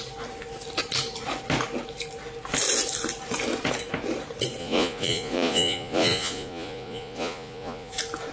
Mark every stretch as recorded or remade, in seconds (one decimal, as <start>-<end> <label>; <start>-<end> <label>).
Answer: 0.0-4.6 recorded; 4.6-7.9 remade; 7.9-8.3 recorded